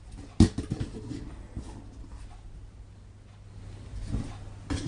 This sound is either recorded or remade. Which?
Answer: recorded